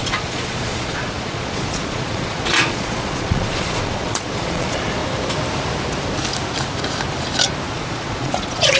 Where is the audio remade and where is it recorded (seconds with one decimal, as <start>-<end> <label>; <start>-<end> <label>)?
0.0-5.0 remade; 5.0-7.7 recorded; 7.7-8.8 remade